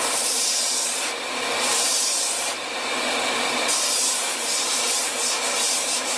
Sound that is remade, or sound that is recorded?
remade